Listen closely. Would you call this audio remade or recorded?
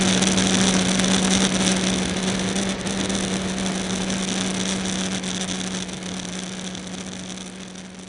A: recorded